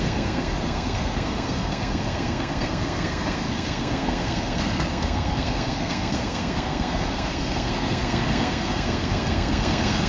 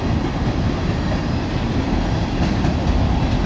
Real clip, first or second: second